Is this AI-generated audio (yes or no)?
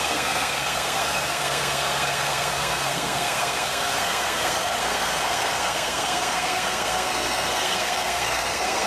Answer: yes